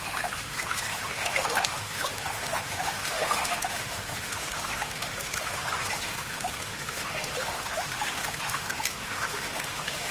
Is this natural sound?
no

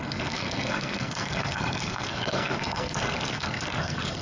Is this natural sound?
no